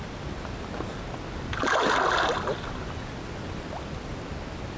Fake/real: real